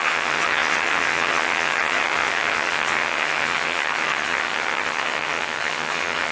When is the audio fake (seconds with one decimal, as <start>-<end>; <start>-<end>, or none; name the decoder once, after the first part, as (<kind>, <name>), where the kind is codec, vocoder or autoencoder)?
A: 0.0-6.3 (vocoder, HiFi-GAN)